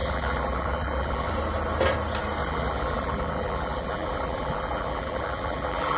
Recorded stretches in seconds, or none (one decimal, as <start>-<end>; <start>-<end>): 1.3-2.4